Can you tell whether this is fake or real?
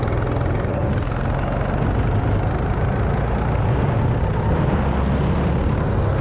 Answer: real